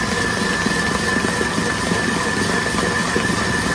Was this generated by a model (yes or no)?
no